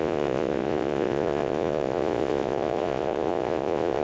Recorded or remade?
remade